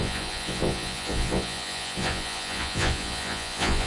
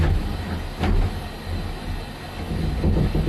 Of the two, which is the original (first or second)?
second